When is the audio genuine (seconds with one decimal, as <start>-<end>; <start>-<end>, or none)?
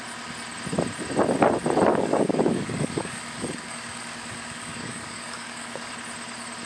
0.0-1.9; 5.9-6.7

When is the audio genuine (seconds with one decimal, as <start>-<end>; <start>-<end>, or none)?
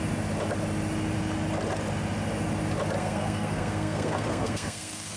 0.0-3.0